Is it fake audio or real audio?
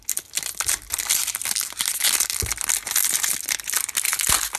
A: real